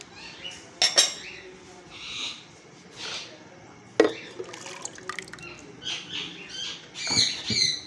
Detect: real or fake real